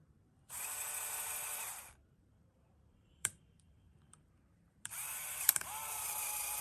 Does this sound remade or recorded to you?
remade